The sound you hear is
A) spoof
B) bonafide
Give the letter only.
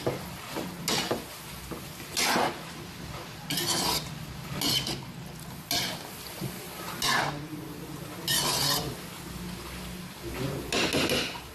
B